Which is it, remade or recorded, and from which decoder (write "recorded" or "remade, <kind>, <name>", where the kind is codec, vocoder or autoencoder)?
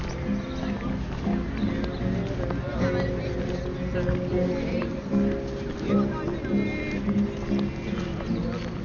recorded